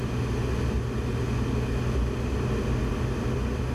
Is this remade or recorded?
recorded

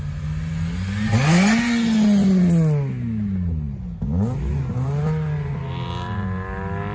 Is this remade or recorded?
recorded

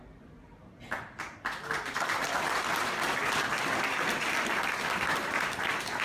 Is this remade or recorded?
recorded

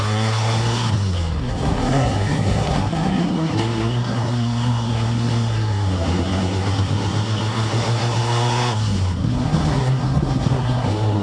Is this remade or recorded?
remade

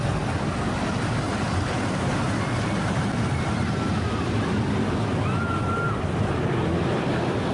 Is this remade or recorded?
recorded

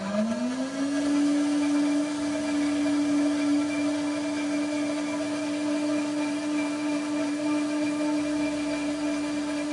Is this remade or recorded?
recorded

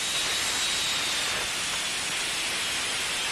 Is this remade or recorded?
recorded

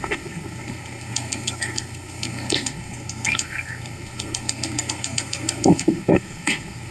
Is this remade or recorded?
remade